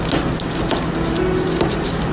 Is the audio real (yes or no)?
yes